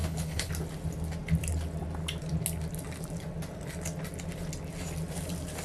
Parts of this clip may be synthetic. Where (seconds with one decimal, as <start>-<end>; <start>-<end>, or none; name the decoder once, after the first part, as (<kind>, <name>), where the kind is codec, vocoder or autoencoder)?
0.0-0.5 (codec, HILCodec)